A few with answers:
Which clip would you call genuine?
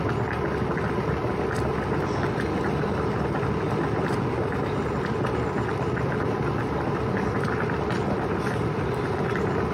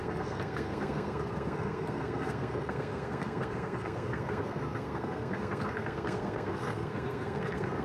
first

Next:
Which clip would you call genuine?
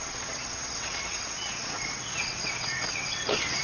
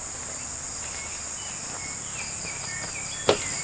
second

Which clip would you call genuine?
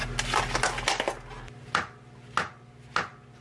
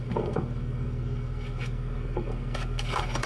first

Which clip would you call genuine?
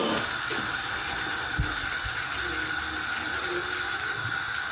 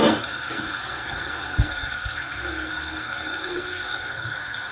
first